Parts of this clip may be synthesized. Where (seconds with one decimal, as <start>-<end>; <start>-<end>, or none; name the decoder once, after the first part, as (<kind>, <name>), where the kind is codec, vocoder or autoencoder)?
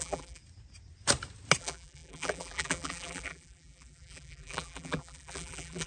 0.0-0.4 (vocoder, BigVGAN v2); 1.6-5.9